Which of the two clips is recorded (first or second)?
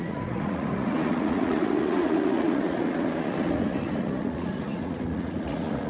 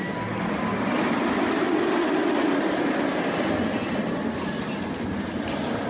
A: second